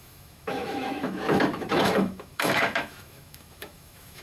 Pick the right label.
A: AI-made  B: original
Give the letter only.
A